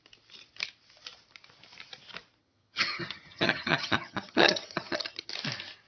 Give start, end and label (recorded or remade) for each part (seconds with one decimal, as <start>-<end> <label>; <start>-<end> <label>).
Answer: 0.0-2.4 recorded; 2.4-5.3 remade; 5.3-5.9 recorded